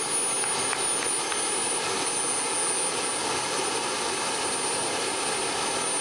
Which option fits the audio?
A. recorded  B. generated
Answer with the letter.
A